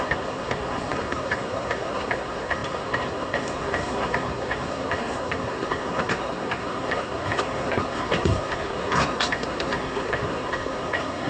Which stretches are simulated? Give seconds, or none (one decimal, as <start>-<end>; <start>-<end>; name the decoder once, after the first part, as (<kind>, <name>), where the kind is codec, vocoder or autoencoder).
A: 0.0-11.3 (codec, SNAC)